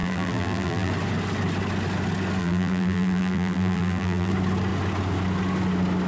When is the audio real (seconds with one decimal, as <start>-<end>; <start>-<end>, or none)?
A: 0.9-2.4; 4.3-6.1

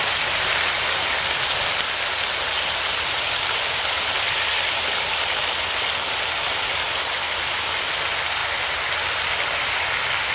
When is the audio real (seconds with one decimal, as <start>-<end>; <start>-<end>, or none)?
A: 1.0-2.9; 7.5-10.3

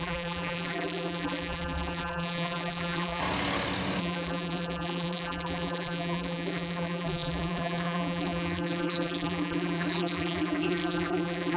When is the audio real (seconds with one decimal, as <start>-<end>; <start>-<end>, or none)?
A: 3.2-4.0

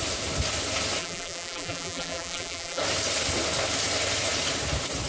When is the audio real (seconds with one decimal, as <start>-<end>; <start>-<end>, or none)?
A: 0.0-1.0; 2.8-5.1

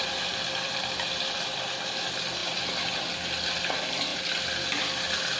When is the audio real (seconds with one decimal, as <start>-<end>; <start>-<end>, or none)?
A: 1.8-2.4; 3.0-4.1

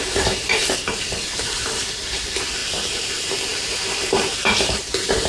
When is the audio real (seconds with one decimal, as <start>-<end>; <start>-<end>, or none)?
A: 0.6-1.2; 2.6-3.1